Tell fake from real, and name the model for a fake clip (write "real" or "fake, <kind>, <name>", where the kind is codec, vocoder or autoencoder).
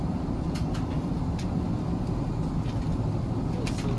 real